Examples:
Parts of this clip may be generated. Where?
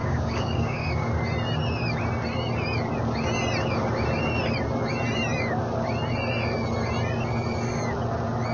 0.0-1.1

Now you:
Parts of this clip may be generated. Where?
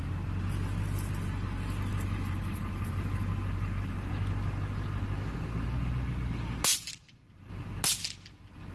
1.9-4.1; 6.7-7.5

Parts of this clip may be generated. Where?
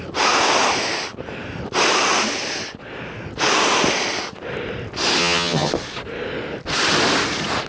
5.2-5.7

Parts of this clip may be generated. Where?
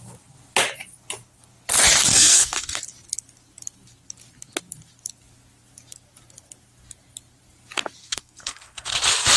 2.1-2.8; 8.0-8.9